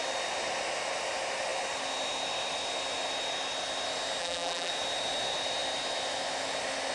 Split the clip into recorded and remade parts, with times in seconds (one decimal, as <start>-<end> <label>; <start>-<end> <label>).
0.0-4.2 recorded; 4.2-4.7 remade; 4.7-6.9 recorded